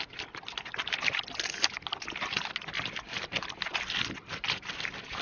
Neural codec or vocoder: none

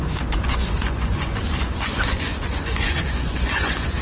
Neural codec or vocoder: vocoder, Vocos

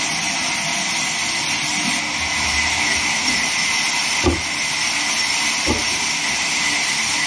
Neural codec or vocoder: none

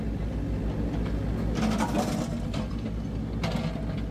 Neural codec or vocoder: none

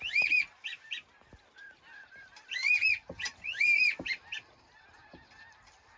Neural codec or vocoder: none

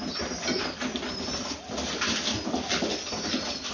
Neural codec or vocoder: none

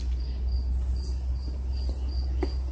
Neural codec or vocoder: none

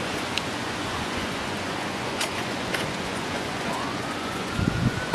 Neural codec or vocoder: vocoder, Vocos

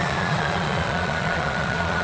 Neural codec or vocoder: vocoder, Vocos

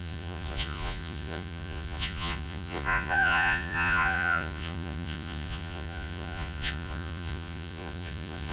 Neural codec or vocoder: vocoder, Vocos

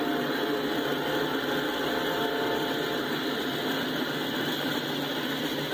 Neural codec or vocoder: none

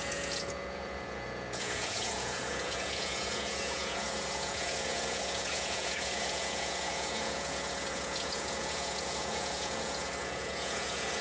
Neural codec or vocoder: vocoder, Vocos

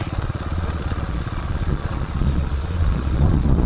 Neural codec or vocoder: vocoder, Vocos